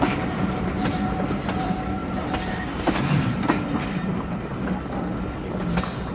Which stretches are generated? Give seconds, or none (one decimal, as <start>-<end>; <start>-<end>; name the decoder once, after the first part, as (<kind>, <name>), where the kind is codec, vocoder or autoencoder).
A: 0.0-4.5 (vocoder, BigVGAN v2)